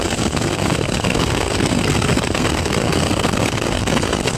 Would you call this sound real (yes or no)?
no